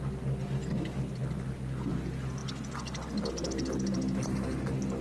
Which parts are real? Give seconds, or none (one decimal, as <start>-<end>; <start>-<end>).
0.0-5.0